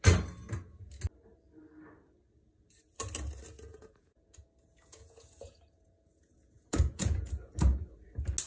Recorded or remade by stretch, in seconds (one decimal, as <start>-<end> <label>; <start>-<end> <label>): 0.0-3.7 recorded; 3.7-7.5 remade; 7.5-8.5 recorded